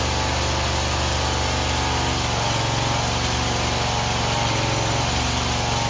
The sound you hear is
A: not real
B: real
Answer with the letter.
B